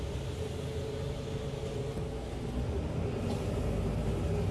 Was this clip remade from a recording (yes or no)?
no